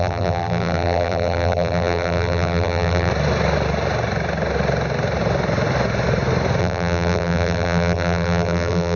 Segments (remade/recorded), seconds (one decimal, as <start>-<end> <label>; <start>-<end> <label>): 0.0-3.1 remade; 3.1-6.6 recorded; 6.6-9.0 remade